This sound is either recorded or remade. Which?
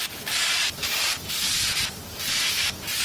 remade